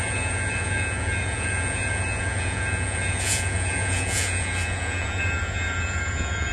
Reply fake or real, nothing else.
fake